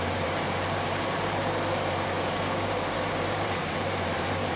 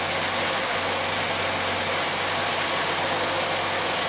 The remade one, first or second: first